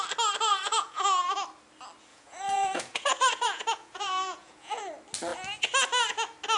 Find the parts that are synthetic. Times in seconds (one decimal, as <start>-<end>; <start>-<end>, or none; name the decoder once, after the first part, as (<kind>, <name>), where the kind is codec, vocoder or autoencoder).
0.5-1.0 (vocoder, Vocos); 2.1-4.8